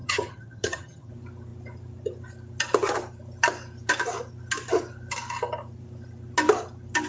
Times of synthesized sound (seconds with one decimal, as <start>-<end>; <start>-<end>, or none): 0.0-1.1